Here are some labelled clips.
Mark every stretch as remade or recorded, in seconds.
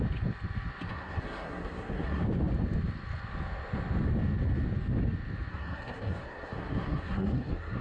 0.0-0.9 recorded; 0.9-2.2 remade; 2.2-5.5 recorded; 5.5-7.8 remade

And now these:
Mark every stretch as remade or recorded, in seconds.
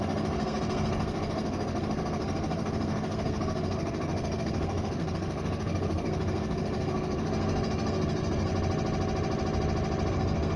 0.0-8.5 remade; 8.5-10.1 recorded; 10.1-10.6 remade